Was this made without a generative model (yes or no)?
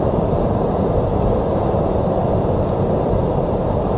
yes